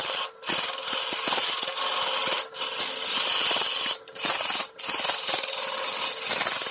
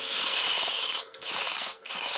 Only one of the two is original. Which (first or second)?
first